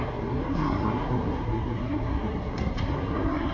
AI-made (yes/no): yes